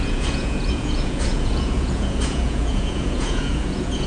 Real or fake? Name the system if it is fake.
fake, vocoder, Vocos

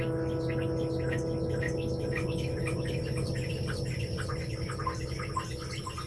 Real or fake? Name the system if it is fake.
real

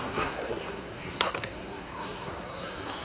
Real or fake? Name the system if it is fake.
fake, codec, SNAC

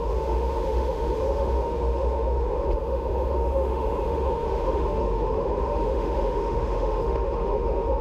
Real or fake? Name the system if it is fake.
fake, autoencoder, DAC-VAE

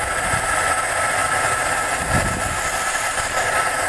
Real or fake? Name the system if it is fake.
real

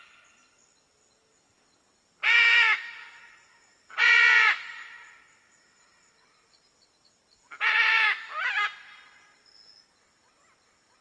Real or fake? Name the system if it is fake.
real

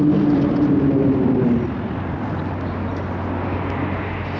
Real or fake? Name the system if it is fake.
real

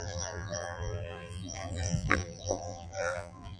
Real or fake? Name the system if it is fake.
fake, vocoder, BigVGAN v2